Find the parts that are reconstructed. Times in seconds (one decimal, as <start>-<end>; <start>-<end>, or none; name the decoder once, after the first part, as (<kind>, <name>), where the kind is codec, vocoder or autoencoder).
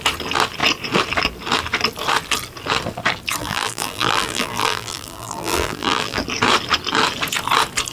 3.4-6.2 (vocoder, BigVGAN v2)